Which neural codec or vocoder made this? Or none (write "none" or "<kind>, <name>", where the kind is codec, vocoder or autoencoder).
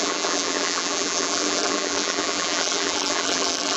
vocoder, BigVGAN v2